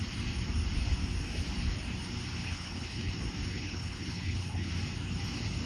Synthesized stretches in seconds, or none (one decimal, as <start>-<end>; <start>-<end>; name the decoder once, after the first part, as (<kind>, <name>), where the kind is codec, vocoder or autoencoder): 2.4-3.1 (codec, HILCodec); 3.5-4.7